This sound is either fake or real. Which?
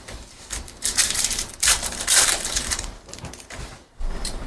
fake